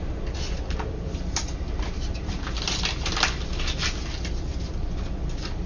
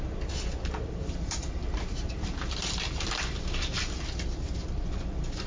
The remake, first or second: second